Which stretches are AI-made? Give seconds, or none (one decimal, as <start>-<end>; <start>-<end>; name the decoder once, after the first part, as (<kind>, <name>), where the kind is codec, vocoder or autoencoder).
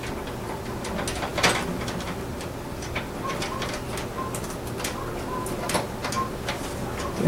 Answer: none